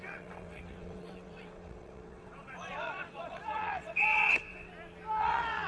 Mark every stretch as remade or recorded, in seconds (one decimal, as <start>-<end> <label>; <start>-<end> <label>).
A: 0.0-4.7 remade; 4.7-5.2 recorded; 5.2-5.7 remade